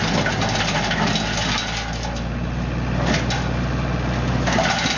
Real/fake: real